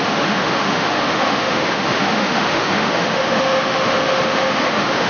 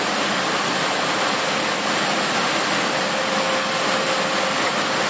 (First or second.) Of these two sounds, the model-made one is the first